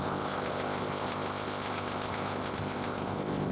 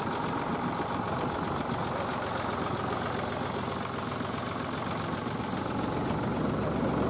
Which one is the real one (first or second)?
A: second